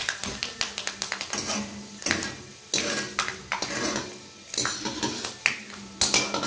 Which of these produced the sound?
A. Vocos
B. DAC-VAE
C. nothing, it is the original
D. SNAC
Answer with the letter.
C